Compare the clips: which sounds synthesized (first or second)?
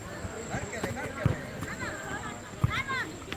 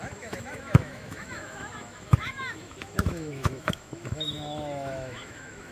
second